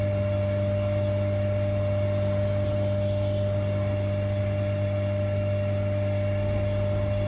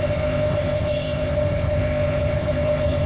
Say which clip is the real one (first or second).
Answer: first